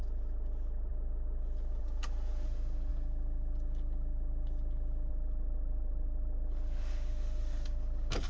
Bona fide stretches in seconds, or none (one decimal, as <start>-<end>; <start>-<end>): 0.9-1.8; 2.9-5.1